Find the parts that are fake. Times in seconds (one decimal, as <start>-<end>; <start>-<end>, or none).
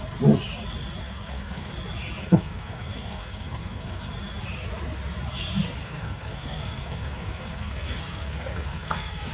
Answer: 1.0-1.7; 2.2-4.1; 5.8-9.3